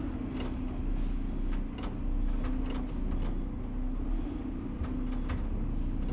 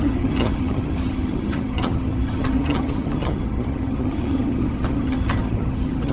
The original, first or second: first